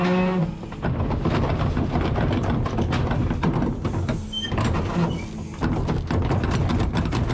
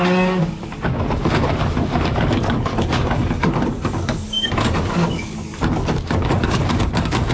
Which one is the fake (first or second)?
second